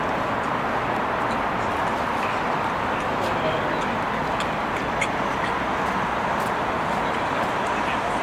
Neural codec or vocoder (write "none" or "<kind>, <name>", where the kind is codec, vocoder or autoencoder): none